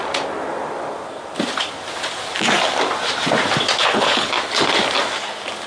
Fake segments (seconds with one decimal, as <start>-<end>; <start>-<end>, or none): 3.8-4.3